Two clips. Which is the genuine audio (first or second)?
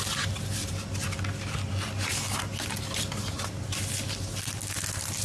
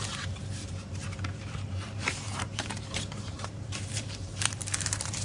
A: first